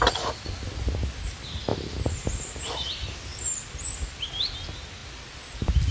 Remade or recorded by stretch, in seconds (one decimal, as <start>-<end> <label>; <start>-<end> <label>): 0.0-5.9 recorded